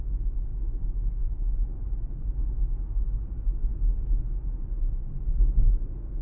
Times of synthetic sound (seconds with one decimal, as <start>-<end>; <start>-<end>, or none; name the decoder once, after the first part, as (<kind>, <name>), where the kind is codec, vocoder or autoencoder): none